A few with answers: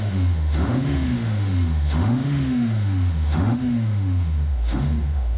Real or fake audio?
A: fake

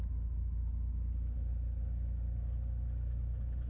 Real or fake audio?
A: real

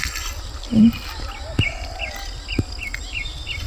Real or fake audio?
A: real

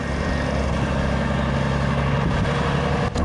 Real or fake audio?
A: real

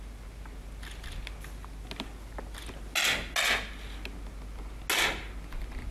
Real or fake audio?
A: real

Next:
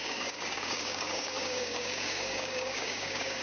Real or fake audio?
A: fake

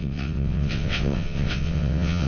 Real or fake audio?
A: fake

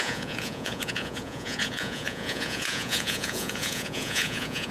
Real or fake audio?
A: fake